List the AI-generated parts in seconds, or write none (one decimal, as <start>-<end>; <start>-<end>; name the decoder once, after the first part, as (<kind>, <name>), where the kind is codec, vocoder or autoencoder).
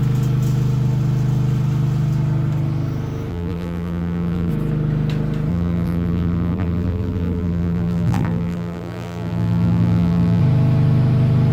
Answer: 3.3-4.5 (vocoder, BigVGAN v2); 5.5-10.4